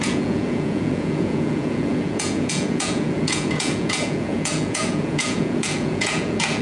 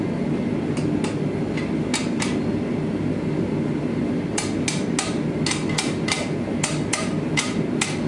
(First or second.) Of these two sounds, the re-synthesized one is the first